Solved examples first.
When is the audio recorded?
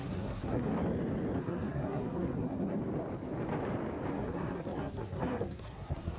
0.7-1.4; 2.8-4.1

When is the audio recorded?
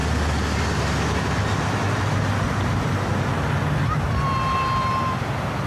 0.0-5.7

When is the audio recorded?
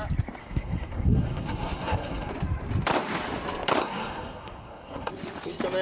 0.0-0.4; 2.3-3.8; 5.1-5.8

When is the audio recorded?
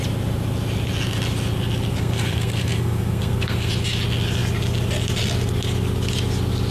0.0-1.9; 3.7-6.7